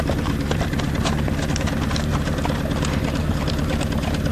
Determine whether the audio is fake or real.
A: fake